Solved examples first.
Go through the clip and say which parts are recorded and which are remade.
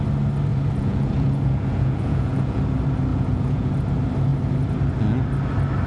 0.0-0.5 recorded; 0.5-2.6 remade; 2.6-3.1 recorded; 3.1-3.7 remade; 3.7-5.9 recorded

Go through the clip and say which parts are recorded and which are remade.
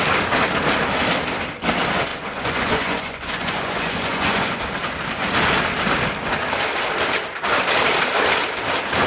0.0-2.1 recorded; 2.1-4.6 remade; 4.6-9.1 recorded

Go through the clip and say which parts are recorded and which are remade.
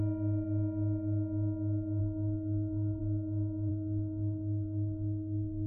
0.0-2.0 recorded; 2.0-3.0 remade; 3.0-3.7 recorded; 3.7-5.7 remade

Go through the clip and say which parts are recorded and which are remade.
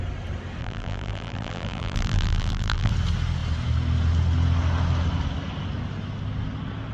0.0-0.6 recorded; 0.6-2.9 remade; 2.9-6.9 recorded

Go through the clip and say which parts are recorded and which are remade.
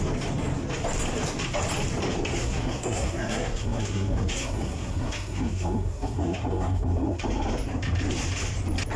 0.0-2.4 recorded; 2.4-7.2 remade; 7.2-9.0 recorded